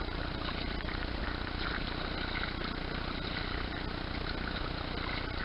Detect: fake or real real